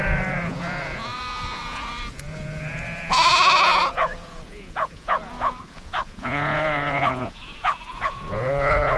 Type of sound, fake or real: fake